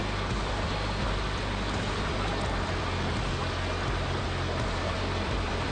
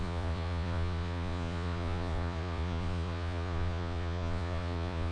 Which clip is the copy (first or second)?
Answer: second